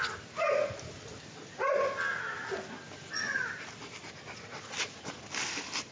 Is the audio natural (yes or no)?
yes